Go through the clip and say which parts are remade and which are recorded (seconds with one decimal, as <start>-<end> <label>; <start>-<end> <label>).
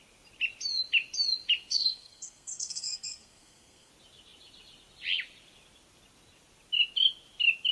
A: 0.0-1.7 recorded; 1.7-3.9 remade; 3.9-7.7 recorded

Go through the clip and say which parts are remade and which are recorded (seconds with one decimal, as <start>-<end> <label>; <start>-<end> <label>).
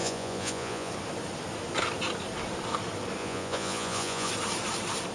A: 0.0-0.9 remade; 0.9-3.2 recorded; 3.2-4.3 remade; 4.3-5.1 recorded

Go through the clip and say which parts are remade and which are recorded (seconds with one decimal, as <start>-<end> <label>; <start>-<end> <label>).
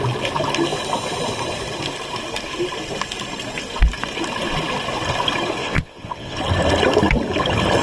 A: 0.0-5.6 recorded; 5.6-6.4 remade; 6.4-7.8 recorded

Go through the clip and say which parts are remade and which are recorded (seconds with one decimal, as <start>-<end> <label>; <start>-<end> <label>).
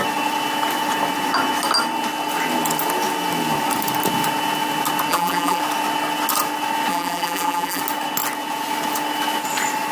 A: 0.0-5.1 recorded; 5.1-5.6 remade; 5.6-6.9 recorded; 6.9-7.8 remade; 7.8-9.9 recorded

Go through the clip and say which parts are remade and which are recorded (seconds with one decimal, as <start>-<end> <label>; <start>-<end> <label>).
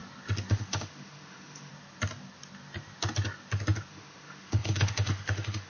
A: 0.0-0.5 recorded; 0.5-1.7 remade; 1.7-3.9 recorded; 3.9-5.7 remade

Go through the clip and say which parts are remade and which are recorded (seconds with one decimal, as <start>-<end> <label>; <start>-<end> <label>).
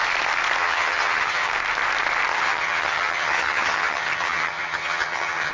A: 0.0-0.6 recorded; 0.6-1.5 remade; 1.5-2.3 recorded; 2.3-5.5 remade